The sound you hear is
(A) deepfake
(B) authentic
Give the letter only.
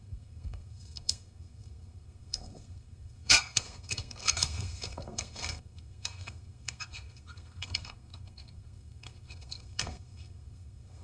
A